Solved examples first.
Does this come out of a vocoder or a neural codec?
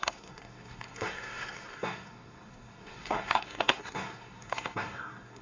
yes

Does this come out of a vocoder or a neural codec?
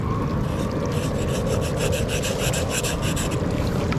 no